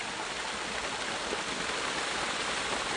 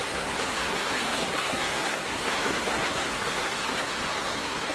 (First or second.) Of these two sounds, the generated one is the second